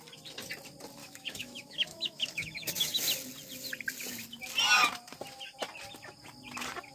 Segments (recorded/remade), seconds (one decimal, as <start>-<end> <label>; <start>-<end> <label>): 0.0-1.0 recorded; 1.0-3.0 remade; 3.0-6.9 recorded